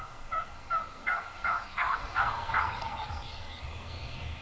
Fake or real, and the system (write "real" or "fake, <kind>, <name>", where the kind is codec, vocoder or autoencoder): fake, codec, SNAC